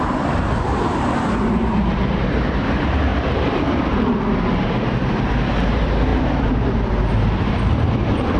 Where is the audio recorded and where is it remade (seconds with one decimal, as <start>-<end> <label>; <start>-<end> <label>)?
0.0-8.4 remade